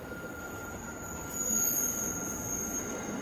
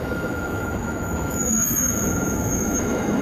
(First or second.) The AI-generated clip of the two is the second